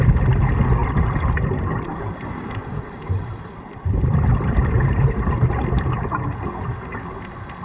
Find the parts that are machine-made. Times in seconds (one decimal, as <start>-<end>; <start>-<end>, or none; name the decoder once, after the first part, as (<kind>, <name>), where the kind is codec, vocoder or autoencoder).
0.8-5.3 (vocoder, BigVGAN v2)